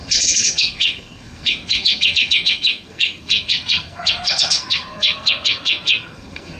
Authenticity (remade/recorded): remade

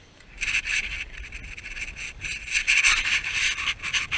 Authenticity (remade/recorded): remade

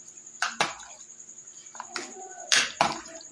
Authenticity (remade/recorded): recorded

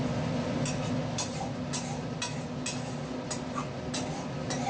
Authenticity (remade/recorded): recorded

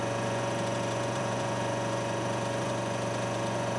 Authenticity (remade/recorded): remade